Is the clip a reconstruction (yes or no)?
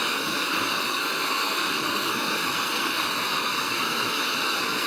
yes